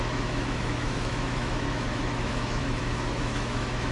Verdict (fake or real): fake